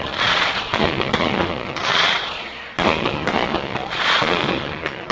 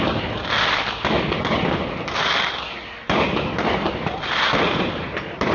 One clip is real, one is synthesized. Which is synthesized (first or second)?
first